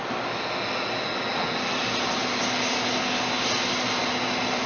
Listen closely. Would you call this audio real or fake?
real